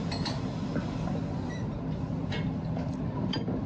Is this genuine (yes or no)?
yes